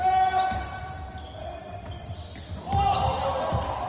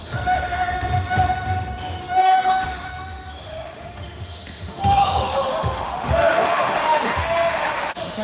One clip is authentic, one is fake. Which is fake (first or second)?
second